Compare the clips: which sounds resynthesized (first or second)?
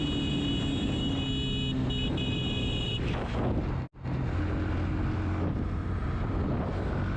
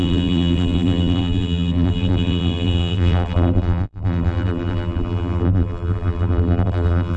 second